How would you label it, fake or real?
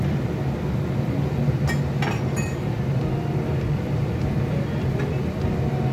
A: real